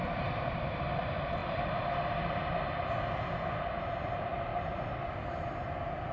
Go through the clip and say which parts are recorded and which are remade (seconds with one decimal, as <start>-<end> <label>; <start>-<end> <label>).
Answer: 0.0-6.1 recorded